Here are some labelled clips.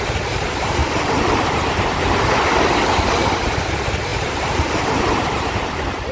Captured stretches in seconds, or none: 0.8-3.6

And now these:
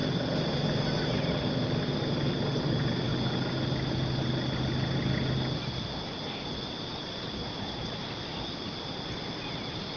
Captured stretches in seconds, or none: 0.0-10.0

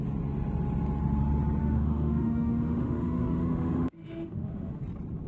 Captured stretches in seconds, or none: 0.0-1.6; 4.8-5.3

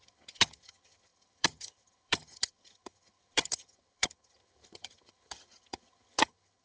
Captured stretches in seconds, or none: none

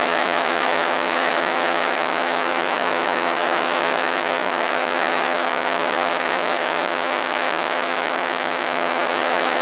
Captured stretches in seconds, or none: none

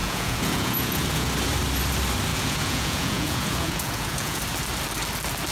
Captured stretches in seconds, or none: 1.3-2.3; 4.4-5.5

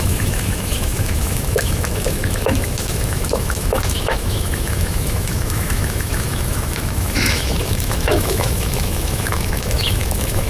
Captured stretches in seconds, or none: none